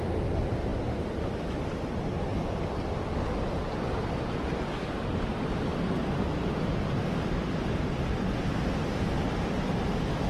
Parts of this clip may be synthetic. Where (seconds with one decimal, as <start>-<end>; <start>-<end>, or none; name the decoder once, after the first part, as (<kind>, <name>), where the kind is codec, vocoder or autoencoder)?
none